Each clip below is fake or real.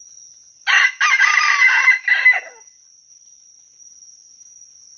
real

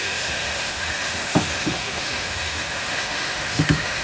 fake